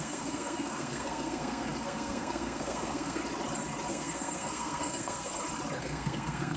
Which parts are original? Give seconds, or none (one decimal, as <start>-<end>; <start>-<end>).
3.2-3.9; 5.3-5.8

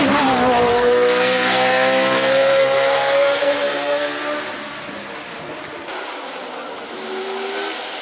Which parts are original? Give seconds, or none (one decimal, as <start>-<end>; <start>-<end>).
0.0-0.7; 4.2-8.0

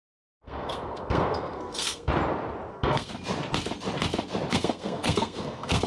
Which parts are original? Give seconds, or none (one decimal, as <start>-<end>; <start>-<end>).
2.1-2.7; 3.1-4.5

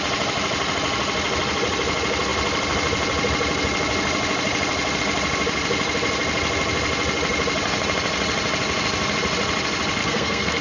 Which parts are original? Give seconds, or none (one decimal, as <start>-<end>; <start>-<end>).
0.0-10.0

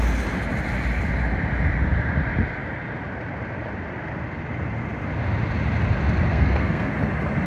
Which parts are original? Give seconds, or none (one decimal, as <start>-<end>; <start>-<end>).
0.0-6.3; 6.9-7.5